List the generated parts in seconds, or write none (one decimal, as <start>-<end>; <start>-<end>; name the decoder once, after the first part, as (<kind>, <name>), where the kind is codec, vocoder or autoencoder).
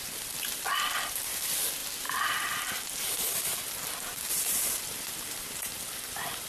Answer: none